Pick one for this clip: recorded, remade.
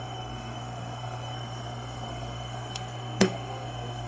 remade